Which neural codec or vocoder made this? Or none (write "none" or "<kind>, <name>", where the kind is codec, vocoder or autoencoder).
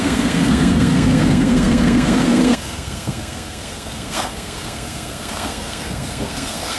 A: codec, SNAC